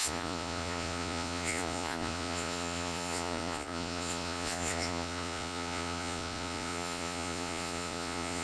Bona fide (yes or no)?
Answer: no